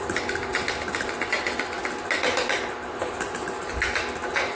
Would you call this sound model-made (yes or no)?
no